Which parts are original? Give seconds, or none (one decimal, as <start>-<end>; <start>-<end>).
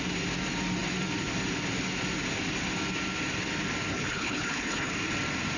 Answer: 0.0-3.9; 4.9-5.6